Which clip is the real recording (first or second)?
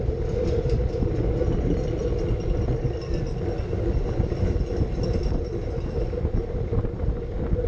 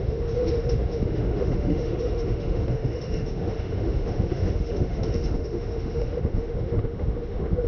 first